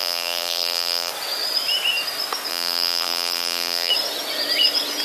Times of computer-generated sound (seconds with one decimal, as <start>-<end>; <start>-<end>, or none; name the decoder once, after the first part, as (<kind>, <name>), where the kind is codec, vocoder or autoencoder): 0.0-1.1 (vocoder, BigVGAN v2); 2.5-3.9